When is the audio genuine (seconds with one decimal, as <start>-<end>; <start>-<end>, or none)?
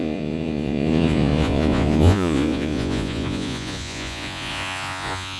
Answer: none